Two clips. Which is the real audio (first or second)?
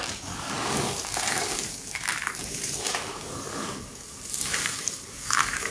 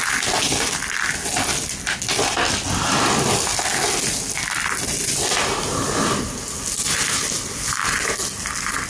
second